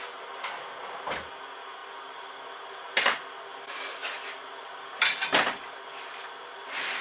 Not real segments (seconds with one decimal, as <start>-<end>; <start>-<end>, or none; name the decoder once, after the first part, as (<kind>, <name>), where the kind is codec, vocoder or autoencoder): 1.8-6.0 (vocoder, BigVGAN v2)

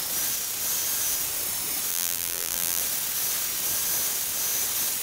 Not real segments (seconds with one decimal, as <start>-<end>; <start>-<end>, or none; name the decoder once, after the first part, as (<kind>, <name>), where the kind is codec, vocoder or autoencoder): 1.9-2.8 (vocoder, BigVGAN v2)

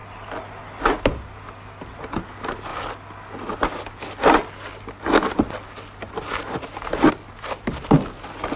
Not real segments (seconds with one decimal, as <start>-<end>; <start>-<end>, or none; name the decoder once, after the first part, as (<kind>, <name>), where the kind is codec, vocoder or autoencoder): none

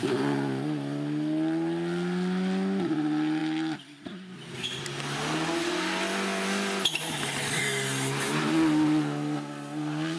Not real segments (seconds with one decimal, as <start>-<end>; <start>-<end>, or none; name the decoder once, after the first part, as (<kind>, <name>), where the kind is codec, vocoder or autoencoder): none

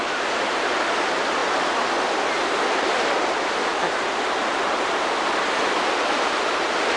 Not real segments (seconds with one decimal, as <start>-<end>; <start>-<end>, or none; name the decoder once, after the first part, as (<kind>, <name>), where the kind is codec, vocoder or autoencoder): none

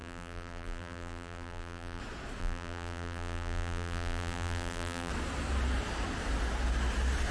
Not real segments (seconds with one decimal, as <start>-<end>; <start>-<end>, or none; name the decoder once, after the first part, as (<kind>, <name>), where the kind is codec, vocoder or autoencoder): 0.0-2.0 (vocoder, BigVGAN v2); 2.4-5.1